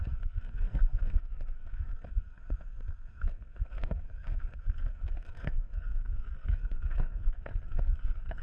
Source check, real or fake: fake